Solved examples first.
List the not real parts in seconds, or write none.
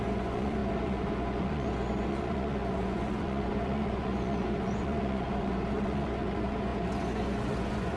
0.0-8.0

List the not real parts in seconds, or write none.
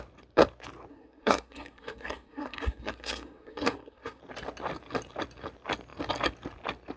0.9-4.2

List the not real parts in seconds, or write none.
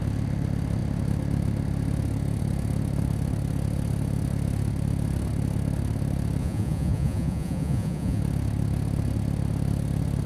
6.4-8.2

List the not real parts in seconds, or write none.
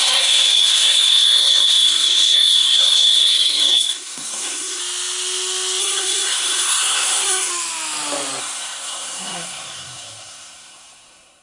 0.0-4.8; 5.8-7.5; 8.4-11.4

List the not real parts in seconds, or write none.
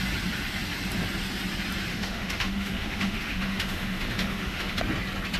1.9-4.8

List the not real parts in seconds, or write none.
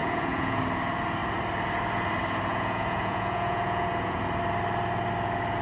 0.0-0.6; 2.5-4.2